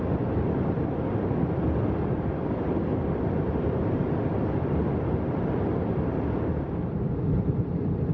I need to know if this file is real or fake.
fake